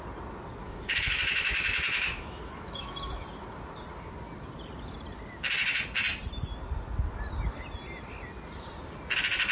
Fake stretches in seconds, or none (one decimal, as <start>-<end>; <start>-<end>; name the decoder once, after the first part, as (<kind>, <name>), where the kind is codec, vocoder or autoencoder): 0.6-3.2 (autoencoder, DAC-VAE)